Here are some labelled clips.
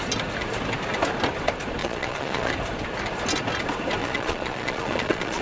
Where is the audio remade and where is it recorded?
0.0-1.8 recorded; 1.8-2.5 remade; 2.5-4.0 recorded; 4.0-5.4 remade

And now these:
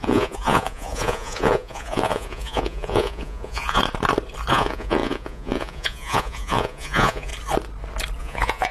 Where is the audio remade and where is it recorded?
0.0-3.8 remade; 3.8-4.5 recorded; 4.5-7.3 remade; 7.3-8.2 recorded; 8.2-8.7 remade

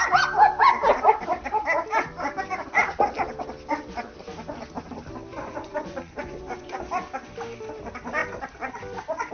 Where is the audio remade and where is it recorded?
0.0-5.3 recorded; 5.3-6.8 remade; 6.8-9.3 recorded

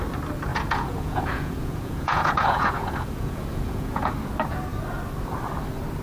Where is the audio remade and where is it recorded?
0.0-0.5 recorded; 0.5-4.1 remade; 4.1-6.0 recorded

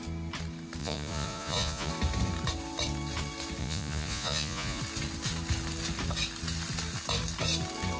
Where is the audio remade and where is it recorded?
0.0-0.8 recorded; 0.8-1.9 remade; 1.9-3.6 recorded; 3.6-4.8 remade; 4.8-8.0 recorded